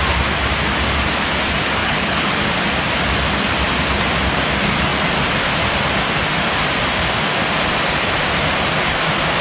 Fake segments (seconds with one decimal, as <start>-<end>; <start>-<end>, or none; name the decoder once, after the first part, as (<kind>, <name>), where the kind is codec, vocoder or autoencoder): 1.8-2.5 (codec, HILCodec)